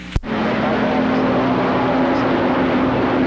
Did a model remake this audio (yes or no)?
no